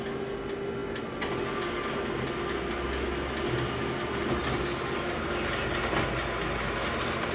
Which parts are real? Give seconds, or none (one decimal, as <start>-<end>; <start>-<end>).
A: 0.0-7.3